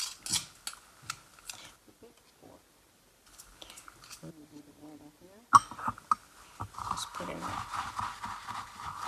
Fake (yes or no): no